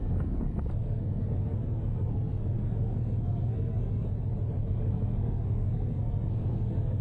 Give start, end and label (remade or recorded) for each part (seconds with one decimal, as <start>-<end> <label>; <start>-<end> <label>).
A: 0.0-4.1 remade; 4.1-4.6 recorded; 4.6-7.0 remade